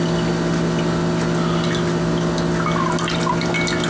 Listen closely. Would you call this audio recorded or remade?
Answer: recorded